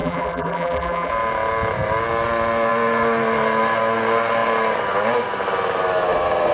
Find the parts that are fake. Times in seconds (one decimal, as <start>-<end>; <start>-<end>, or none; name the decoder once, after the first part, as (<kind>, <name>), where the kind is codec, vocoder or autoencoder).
0.0-1.1 (vocoder, BigVGAN v2)

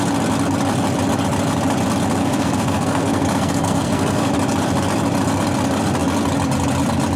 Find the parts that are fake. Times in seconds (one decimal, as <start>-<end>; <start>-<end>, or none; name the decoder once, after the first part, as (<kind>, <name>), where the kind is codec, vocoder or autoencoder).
2.2-4.3 (codec, SNAC)

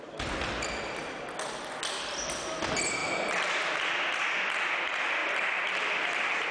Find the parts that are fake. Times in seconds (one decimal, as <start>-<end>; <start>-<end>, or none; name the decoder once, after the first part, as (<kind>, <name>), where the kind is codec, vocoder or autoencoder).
5.2-6.5 (vocoder, BigVGAN v2)

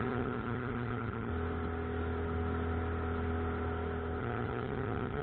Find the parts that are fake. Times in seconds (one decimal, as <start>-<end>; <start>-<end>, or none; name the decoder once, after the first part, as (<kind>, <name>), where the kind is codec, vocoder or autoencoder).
0.0-1.3 (vocoder, HiFi-GAN); 4.2-5.2

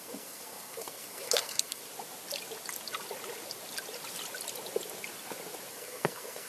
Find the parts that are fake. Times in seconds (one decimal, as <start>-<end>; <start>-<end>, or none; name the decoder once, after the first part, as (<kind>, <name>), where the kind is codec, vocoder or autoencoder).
0.0-1.8 (codec, SNAC); 5.7-6.5